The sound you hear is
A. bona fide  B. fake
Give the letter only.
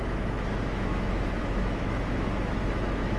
B